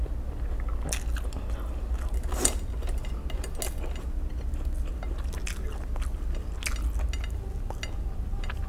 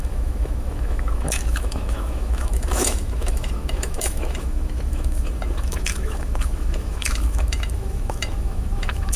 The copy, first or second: second